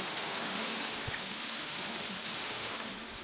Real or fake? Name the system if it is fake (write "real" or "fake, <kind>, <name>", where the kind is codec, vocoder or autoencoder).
fake, autoencoder, DAC-VAE